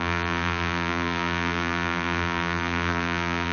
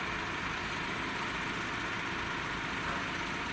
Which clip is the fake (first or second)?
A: first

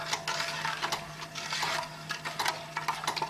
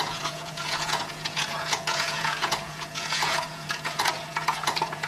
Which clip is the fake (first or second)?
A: second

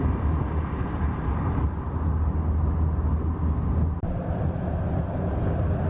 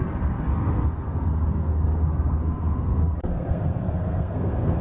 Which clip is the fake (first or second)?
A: second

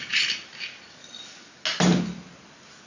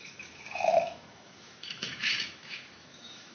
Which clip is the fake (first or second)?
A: second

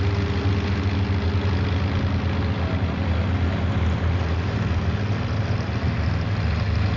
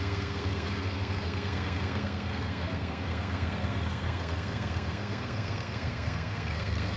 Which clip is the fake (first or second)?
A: second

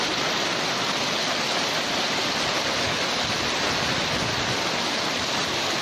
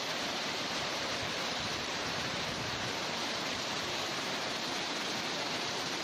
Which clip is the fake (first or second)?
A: second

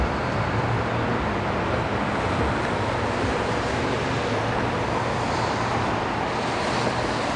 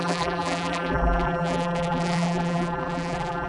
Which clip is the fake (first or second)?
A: second